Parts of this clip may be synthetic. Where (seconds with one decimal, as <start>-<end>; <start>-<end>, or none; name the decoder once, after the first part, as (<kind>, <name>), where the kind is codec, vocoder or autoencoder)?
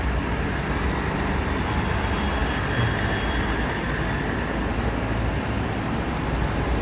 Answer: none